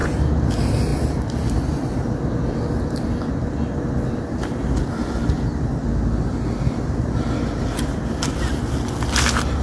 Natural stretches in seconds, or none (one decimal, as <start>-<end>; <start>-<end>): 0.0-9.6